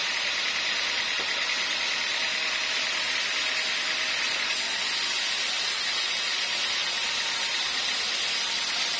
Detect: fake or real real